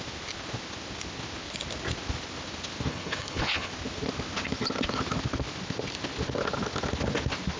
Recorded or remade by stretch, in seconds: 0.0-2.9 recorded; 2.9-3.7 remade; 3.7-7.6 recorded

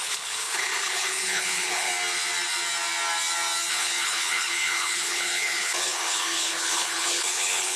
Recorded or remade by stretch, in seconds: 0.0-1.9 remade; 1.9-3.7 recorded; 3.7-7.8 remade

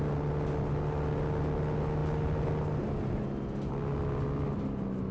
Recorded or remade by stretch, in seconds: 0.0-5.1 recorded

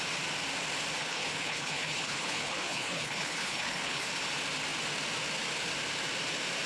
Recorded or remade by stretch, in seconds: 0.0-1.0 recorded; 1.0-4.1 remade; 4.1-6.7 recorded

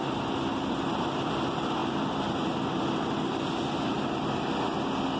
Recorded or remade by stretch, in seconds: 0.0-5.2 recorded

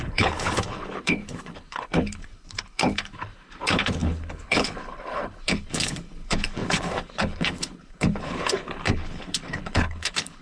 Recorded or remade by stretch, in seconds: 0.0-10.4 remade

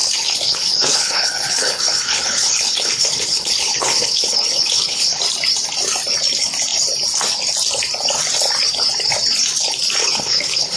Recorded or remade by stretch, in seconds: 0.0-5.2 remade; 5.2-10.0 recorded; 10.0-10.8 remade

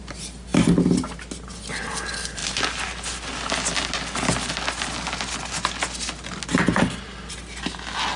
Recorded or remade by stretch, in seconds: 0.0-8.2 recorded